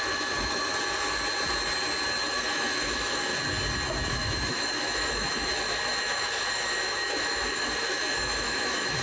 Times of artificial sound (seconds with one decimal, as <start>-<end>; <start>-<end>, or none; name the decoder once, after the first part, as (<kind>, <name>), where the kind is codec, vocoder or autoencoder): 0.0-0.7 (autoencoder, DAC-VAE); 2.3-3.3; 4.1-9.0